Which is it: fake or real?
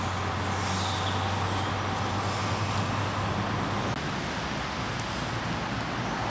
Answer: real